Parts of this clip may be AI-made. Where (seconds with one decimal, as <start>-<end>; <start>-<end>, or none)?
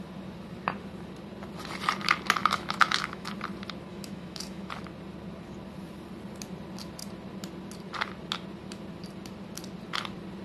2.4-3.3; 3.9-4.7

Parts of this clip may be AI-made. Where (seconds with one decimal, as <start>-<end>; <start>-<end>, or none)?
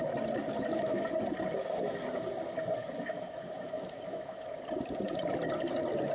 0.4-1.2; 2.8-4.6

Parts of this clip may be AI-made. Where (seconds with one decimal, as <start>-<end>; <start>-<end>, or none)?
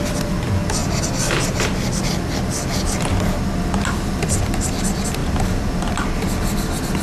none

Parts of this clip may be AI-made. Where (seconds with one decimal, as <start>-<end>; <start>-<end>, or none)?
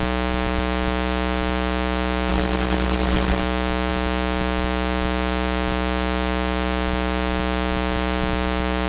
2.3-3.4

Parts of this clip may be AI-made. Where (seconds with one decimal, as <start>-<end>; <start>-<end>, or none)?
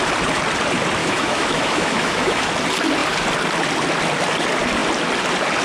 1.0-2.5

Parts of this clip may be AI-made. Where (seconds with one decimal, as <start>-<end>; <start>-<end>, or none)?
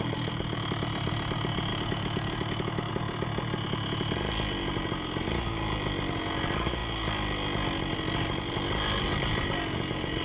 1.7-2.9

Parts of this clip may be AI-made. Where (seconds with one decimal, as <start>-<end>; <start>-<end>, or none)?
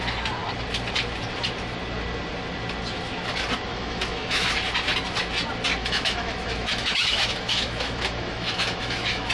3.7-4.5; 5.8-9.3